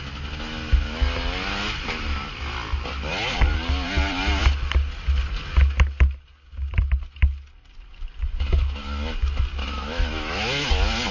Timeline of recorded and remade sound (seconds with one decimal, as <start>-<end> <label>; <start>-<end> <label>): 0.0-9.6 recorded; 9.6-10.7 remade; 10.7-11.1 recorded